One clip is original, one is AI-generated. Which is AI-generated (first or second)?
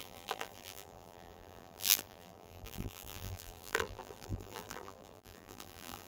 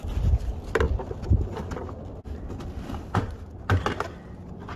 first